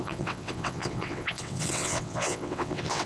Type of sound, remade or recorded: remade